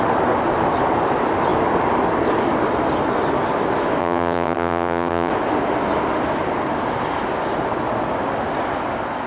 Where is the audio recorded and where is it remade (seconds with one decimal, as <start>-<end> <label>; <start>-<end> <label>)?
0.0-4.0 recorded; 4.0-5.3 remade; 5.3-9.3 recorded